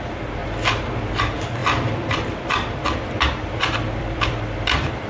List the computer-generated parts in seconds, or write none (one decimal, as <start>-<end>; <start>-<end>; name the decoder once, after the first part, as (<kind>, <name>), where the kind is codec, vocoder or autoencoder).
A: 0.0-0.4 (vocoder, BigVGAN v2); 1.2-5.1